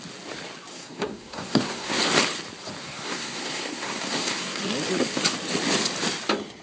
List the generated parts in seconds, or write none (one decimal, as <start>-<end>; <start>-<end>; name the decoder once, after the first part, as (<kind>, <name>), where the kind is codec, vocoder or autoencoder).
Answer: 0.7-2.0 (codec, SNAC); 2.8-4.6